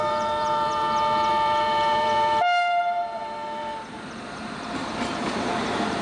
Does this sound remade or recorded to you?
remade